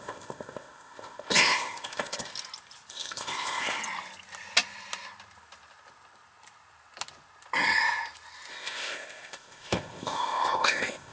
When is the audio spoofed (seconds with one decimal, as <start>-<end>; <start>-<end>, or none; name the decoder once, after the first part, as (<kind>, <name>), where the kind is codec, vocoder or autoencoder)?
0.0-2.3 (codec, ZipCodec); 2.9-3.8; 8.5-11.1